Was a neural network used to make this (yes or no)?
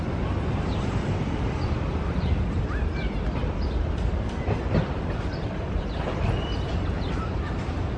yes